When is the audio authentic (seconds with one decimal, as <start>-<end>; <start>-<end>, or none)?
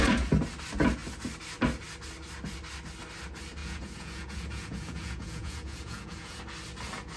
0.0-3.6; 6.4-7.2